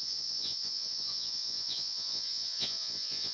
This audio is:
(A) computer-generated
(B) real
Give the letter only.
A